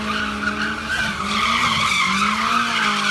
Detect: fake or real real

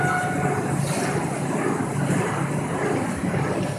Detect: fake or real real